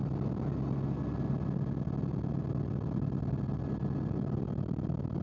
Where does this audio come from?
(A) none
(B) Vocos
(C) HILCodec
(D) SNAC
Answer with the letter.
A